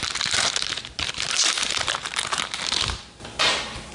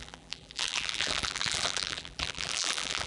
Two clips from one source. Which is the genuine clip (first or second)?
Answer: first